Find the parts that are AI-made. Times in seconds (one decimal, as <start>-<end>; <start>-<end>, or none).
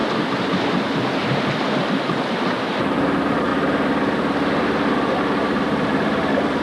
1.2-3.5; 5.4-6.6